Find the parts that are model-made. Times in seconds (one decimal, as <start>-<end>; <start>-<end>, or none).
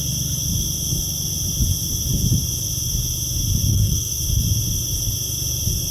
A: 3.7-4.2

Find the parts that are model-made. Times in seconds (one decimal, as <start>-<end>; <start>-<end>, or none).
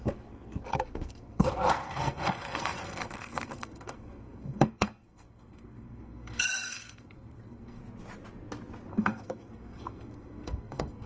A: 0.0-7.8; 8.9-11.1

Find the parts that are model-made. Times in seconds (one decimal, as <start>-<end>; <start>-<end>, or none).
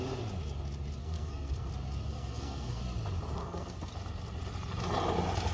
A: 1.0-1.7; 2.1-2.8; 3.4-3.9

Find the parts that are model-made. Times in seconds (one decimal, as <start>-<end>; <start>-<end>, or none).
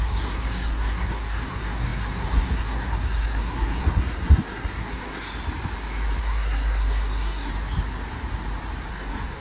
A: 0.0-5.3; 6.2-7.5; 8.9-9.4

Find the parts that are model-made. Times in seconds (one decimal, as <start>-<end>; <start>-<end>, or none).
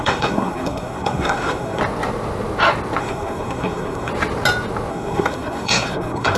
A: 0.0-1.8; 3.0-4.1; 4.9-6.4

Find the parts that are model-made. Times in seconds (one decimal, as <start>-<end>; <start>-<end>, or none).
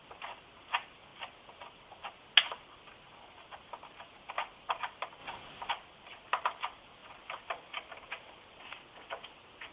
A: none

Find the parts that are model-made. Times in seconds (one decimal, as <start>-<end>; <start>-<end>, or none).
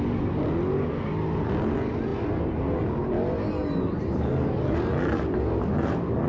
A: none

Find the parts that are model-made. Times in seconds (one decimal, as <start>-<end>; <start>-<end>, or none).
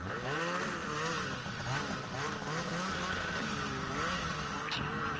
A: none